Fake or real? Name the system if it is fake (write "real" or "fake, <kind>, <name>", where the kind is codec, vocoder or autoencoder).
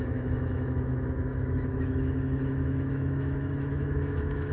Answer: fake, autoencoder, DAC-VAE